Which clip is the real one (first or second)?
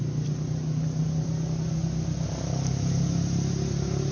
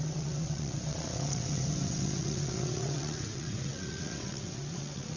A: first